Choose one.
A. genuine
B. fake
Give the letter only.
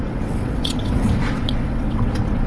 B